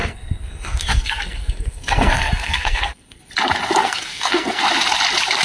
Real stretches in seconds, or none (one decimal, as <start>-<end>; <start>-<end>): 3.2-3.8; 4.6-5.4